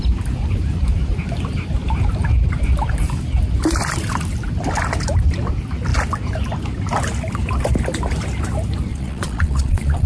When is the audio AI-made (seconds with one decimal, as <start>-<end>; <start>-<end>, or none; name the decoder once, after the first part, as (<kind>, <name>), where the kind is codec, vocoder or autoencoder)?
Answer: 8.9-10.1 (vocoder, Vocos)